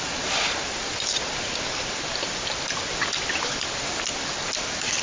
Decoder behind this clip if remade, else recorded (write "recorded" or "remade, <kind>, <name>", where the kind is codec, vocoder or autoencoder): recorded